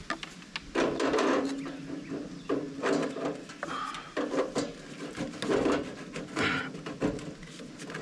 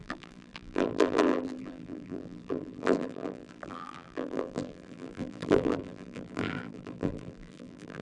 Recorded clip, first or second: first